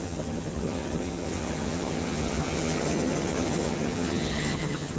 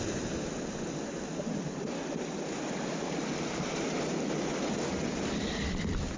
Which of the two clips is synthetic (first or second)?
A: first